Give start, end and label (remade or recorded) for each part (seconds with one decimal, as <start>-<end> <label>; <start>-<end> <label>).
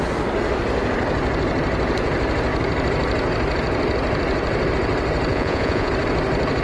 0.0-5.3 recorded; 5.3-5.9 remade; 5.9-6.6 recorded